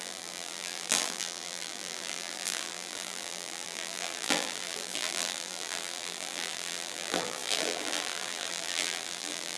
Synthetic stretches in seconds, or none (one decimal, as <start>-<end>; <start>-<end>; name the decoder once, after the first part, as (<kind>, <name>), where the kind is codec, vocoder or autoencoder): 0.0-9.6 (vocoder, BigVGAN v2)